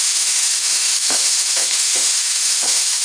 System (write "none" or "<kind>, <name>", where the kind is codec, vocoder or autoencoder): autoencoder, DAC-VAE